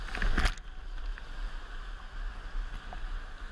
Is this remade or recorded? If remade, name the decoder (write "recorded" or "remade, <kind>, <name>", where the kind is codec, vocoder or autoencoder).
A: recorded